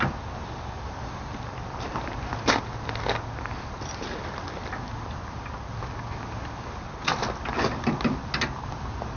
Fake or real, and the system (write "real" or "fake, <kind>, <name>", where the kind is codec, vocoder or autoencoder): real